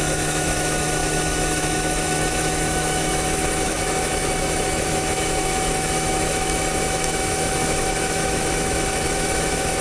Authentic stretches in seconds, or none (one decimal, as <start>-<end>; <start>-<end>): none